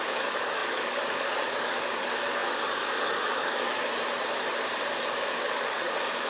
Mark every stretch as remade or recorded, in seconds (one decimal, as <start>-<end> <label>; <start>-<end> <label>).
0.0-3.8 remade; 3.8-5.0 recorded; 5.0-6.3 remade